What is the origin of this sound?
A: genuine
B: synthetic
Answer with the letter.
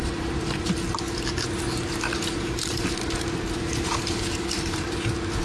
B